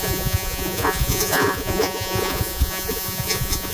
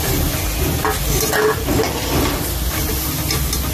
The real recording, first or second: second